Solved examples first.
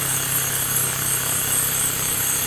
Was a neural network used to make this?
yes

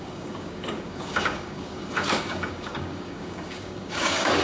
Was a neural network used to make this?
yes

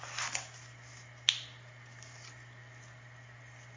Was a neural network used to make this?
no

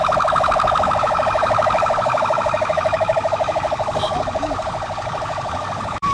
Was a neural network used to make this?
yes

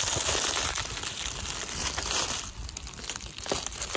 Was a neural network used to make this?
no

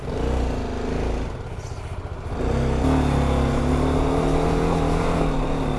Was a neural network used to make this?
no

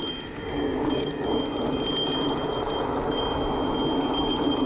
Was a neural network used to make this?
no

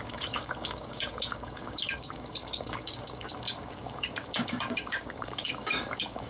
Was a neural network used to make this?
yes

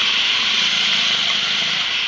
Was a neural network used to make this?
no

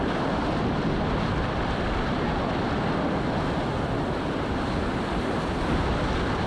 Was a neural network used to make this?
no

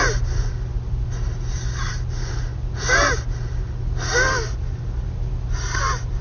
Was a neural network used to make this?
no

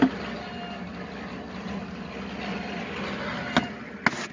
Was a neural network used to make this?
no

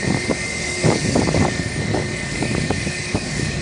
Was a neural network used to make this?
yes